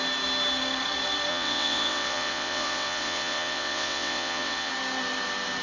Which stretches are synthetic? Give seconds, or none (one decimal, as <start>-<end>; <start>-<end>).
1.3-4.7